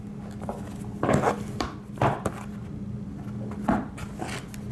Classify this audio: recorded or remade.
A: recorded